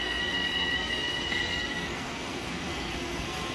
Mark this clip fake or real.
fake